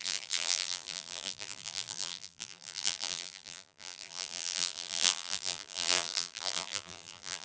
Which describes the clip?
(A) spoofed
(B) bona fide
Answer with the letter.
A